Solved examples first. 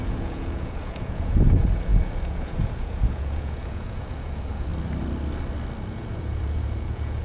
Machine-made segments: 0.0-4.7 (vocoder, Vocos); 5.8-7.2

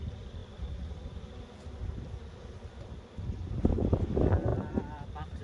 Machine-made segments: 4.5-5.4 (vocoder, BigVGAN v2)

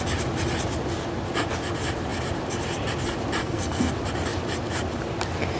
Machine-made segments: 3.4-3.9 (codec, SNAC)

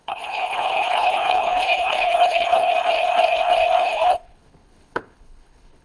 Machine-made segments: 0.0-2.7 (codec, HILCodec); 3.8-5.8

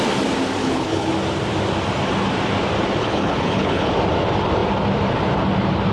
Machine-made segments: 0.6-1.1 (codec, HILCodec); 3.0-3.9